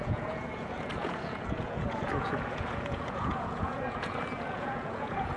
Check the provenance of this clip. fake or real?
fake